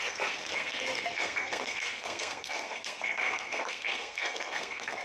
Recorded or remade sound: remade